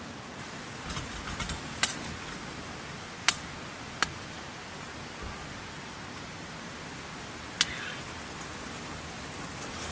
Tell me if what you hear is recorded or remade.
recorded